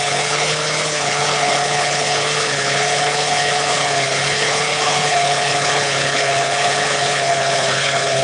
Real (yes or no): no